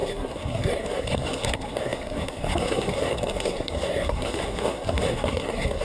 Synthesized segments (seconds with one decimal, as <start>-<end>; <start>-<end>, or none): 0.0-5.8

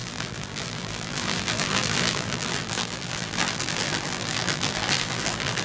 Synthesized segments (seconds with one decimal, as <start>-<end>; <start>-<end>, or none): 0.0-5.6

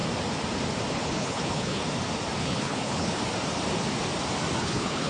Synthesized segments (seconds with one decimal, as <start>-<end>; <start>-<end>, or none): 0.9-1.8; 2.4-3.2; 4.6-5.1

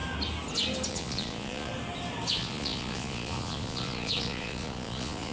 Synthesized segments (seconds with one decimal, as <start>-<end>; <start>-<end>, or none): 0.9-1.7; 2.3-5.3

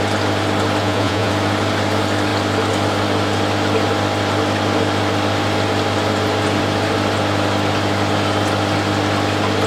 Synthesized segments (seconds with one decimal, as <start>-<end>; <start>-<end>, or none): 0.8-1.3